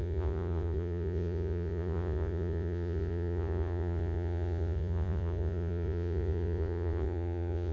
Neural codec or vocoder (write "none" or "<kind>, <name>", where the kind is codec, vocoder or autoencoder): vocoder, Vocos